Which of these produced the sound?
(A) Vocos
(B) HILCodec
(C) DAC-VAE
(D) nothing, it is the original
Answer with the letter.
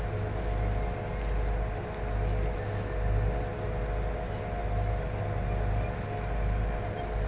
D